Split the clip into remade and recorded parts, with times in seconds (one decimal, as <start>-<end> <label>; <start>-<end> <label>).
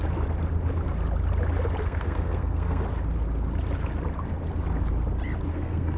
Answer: 0.0-1.8 recorded; 1.8-2.8 remade; 2.8-5.5 recorded; 5.5-6.0 remade